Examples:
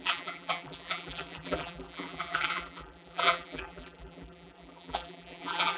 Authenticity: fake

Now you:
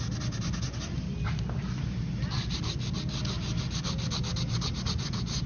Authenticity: real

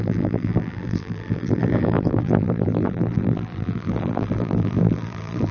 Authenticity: fake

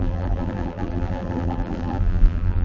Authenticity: fake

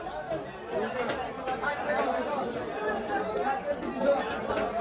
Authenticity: real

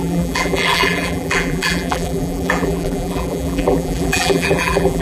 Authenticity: fake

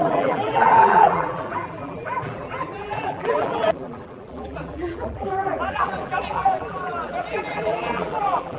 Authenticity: fake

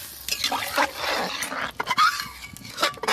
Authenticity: real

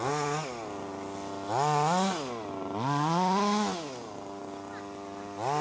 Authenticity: real